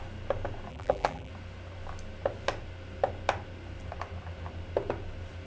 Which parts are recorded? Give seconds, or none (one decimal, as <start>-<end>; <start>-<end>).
0.0-0.7; 1.3-5.5